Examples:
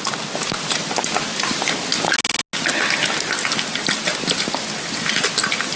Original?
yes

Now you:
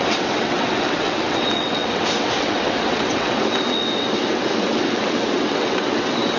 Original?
no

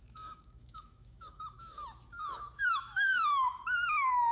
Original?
no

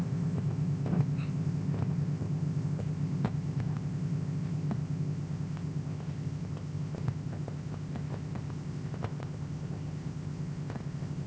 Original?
no